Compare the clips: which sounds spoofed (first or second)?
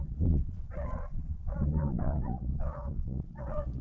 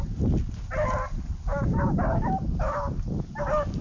first